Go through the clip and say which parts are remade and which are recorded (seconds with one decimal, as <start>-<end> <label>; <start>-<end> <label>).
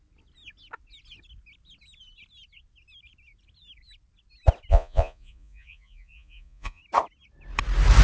0.0-4.7 recorded; 4.7-6.8 remade; 6.8-8.0 recorded